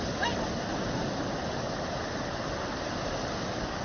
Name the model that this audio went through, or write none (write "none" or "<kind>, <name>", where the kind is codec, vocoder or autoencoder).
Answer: none